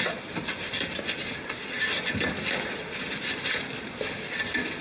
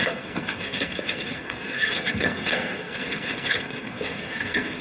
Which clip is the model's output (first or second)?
second